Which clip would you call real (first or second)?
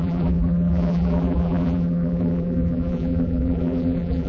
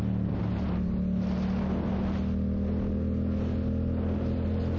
second